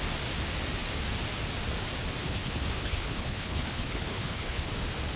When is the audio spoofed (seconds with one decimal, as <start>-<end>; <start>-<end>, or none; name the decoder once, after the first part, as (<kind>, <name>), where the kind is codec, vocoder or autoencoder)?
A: 2.2-4.7 (codec, HILCodec)